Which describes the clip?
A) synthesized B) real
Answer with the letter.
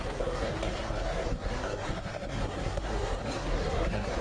A